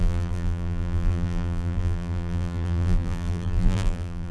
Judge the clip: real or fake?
fake